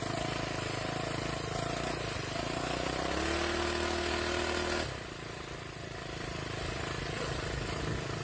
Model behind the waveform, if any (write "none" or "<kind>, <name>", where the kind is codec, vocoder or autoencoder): none